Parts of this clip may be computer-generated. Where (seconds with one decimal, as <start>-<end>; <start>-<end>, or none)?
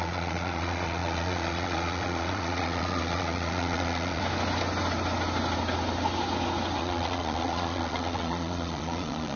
0.0-4.2; 6.8-9.4